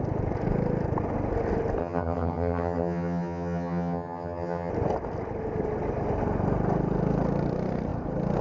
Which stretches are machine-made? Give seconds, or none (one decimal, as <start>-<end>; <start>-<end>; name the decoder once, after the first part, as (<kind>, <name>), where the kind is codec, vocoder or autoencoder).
1.8-4.7 (vocoder, HiFi-GAN)